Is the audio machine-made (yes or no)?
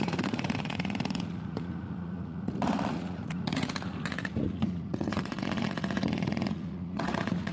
yes